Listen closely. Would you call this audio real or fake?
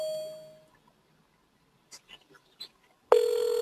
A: real